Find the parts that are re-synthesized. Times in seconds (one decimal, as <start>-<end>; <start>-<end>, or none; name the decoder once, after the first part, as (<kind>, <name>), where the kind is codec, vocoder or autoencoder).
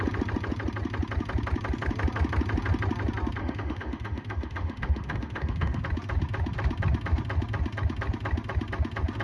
3.4-5.8 (autoencoder, DAC-VAE)